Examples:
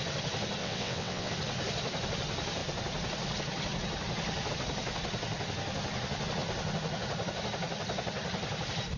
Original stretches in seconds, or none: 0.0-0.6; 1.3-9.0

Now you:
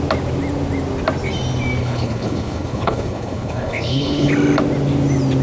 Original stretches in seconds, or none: 0.0-1.8; 4.3-5.4